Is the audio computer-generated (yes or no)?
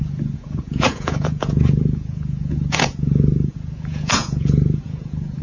yes